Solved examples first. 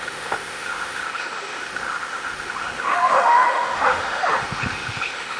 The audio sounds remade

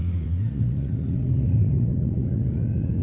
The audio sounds remade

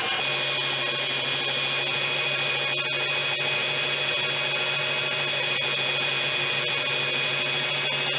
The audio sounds recorded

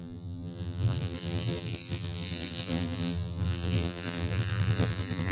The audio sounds remade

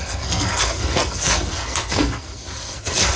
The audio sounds remade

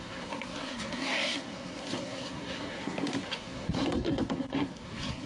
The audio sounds remade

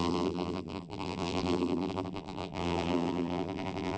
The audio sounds remade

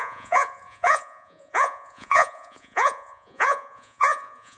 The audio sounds remade